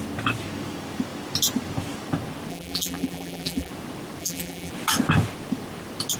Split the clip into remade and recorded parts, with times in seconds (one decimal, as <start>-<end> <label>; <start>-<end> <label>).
0.0-2.5 recorded; 2.5-3.7 remade; 3.7-4.2 recorded; 4.2-4.7 remade; 4.7-6.2 recorded